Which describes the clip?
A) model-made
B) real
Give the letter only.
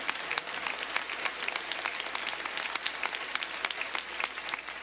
B